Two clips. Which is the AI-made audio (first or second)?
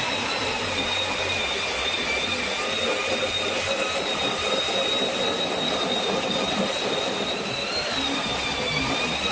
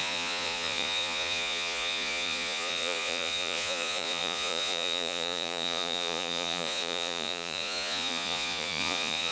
second